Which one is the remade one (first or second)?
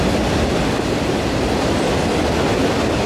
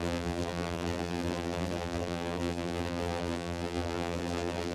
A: second